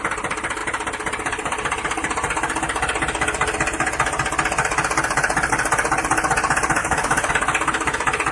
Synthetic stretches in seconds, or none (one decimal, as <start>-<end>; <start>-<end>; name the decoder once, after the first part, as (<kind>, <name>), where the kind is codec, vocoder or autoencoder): 6.8-7.3 (autoencoder, DAC-VAE)